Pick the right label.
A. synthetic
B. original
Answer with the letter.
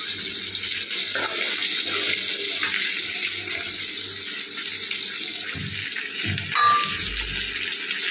B